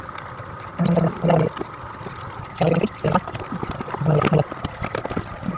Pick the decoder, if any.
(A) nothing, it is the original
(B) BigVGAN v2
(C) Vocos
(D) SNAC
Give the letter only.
B